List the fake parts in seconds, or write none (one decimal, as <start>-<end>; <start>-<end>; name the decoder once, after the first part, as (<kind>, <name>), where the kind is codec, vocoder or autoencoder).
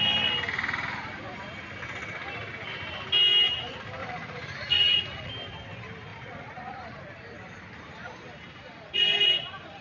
4.0-5.3 (vocoder, Vocos); 6.1-7.0